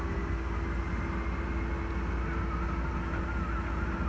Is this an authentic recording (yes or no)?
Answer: yes